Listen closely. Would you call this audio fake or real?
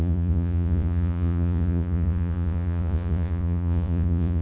fake